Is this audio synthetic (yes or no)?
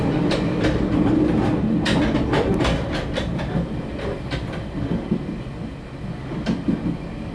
no